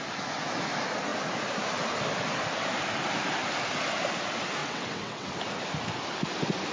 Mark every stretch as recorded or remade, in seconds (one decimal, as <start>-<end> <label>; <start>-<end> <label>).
0.0-4.6 recorded; 4.6-5.3 remade; 5.3-6.7 recorded